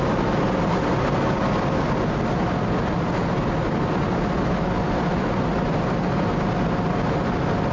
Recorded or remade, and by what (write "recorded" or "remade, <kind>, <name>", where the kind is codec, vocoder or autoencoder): recorded